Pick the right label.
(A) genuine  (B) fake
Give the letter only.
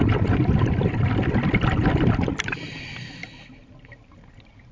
A